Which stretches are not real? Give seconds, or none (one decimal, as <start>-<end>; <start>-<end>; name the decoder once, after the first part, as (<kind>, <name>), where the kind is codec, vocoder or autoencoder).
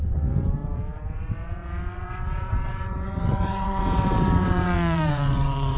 0.0-5.8 (vocoder, WaveNeXt)